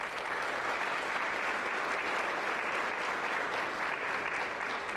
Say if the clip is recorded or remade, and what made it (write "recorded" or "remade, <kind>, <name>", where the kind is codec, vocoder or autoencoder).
recorded